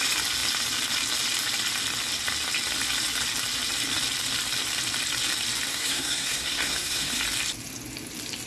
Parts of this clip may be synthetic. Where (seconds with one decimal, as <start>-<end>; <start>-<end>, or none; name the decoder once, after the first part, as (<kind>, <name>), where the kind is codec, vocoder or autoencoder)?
5.7-7.2 (codec, SNAC)